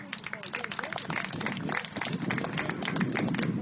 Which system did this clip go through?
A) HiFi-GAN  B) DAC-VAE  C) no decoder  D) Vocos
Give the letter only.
C